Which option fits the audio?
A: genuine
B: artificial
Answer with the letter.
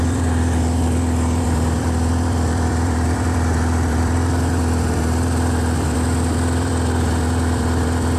B